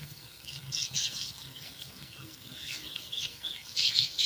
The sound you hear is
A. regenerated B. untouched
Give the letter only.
A